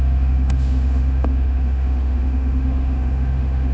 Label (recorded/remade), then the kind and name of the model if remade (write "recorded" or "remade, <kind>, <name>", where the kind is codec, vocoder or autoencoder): remade, autoencoder, DAC-VAE